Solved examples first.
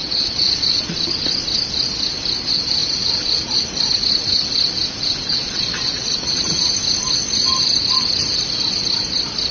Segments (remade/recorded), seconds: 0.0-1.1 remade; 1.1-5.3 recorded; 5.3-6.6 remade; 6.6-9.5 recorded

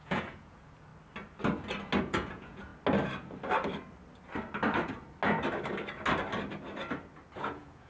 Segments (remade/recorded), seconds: 0.0-0.9 remade; 0.9-2.0 recorded; 2.0-2.7 remade; 2.7-7.4 recorded; 7.4-7.9 remade

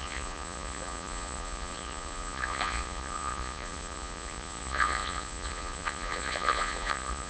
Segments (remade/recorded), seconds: 0.0-7.3 remade

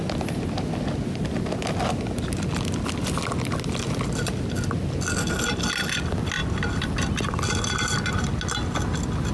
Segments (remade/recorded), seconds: 0.0-9.3 recorded

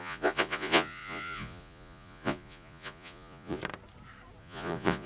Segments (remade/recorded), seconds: 0.0-3.6 remade; 3.6-4.4 recorded; 4.4-5.1 remade

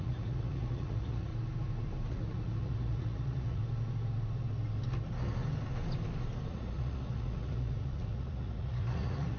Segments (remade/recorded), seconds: 0.0-1.3 remade; 1.3-2.1 recorded; 2.1-3.6 remade; 3.6-6.5 recorded; 6.5-9.4 remade

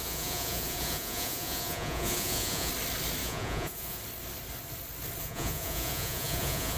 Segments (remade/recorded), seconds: 0.0-2.7 remade; 2.7-3.2 recorded; 3.2-4.0 remade; 4.0-5.2 recorded; 5.2-6.8 remade